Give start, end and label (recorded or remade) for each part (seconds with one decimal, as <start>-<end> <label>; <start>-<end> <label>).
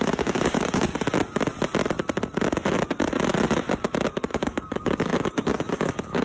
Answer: 0.0-0.9 remade; 0.9-4.3 recorded; 4.3-6.2 remade